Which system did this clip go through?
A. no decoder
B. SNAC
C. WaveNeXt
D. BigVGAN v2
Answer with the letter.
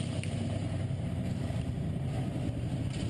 D